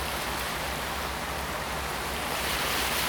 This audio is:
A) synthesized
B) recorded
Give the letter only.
A